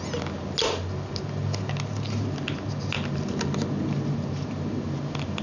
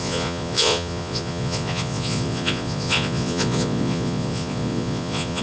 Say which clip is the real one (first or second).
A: first